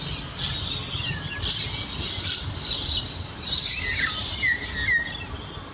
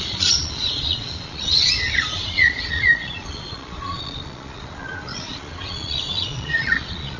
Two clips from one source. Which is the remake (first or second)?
second